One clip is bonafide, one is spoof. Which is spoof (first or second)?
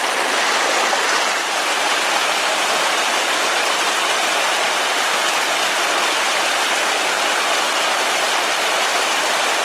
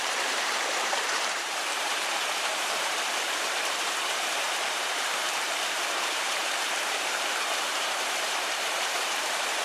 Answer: second